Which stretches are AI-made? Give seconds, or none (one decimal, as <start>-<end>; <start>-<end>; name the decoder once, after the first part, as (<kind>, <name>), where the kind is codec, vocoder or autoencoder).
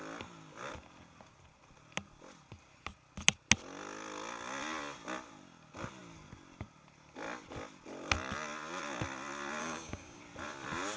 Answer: 9.6-10.2 (codec, DAC)